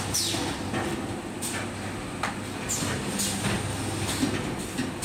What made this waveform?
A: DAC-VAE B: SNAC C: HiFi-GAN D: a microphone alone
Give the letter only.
D